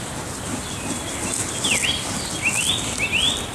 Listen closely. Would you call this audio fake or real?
real